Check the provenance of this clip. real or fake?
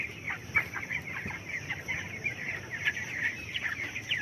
fake